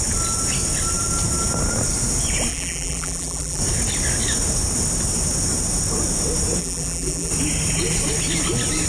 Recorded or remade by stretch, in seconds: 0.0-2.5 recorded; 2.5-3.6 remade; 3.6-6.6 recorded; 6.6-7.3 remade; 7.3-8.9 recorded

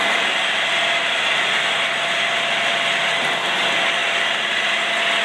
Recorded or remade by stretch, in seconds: 0.0-5.2 recorded